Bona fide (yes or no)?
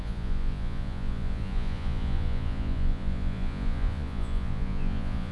no